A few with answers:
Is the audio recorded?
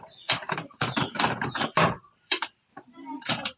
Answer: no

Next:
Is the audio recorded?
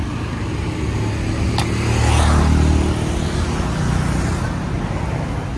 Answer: yes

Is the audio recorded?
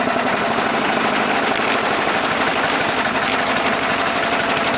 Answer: yes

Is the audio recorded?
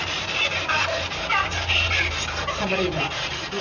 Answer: no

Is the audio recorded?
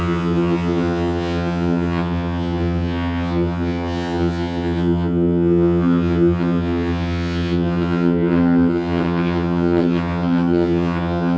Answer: no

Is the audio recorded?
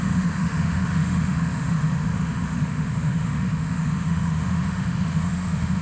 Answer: no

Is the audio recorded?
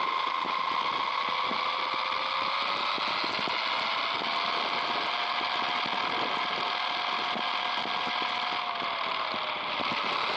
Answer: yes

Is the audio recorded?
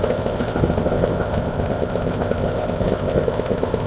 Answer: no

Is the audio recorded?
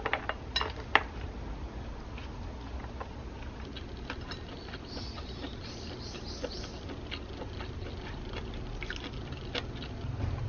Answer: yes